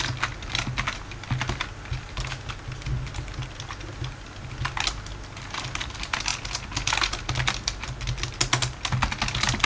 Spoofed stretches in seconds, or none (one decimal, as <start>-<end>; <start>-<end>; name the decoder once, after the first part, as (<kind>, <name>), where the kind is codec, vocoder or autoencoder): none